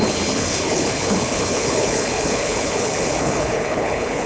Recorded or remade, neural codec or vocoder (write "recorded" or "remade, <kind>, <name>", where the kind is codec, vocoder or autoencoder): remade, codec, HILCodec